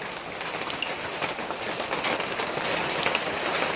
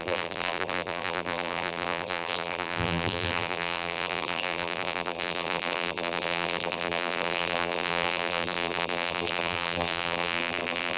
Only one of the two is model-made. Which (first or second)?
second